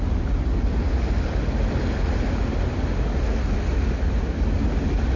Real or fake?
real